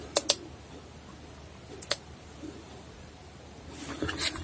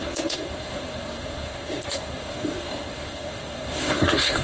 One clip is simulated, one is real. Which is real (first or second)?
first